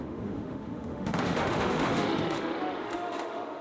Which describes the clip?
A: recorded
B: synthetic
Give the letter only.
B